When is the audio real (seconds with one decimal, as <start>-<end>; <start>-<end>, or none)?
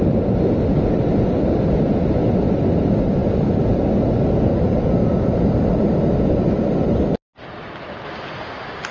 0.0-8.9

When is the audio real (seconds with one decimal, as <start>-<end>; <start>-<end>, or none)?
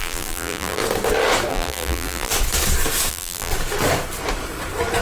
0.8-1.5; 2.3-3.1; 3.5-5.0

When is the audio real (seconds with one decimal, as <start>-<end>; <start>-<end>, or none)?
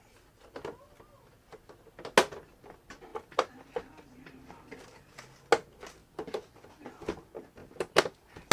0.0-3.1; 3.7-6.0; 6.9-7.6